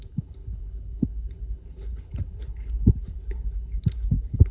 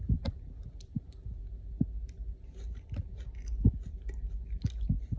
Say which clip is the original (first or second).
second